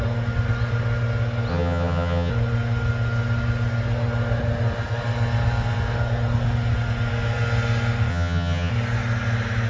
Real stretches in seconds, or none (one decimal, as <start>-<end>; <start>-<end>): 0.0-1.5; 2.3-8.1; 8.7-9.7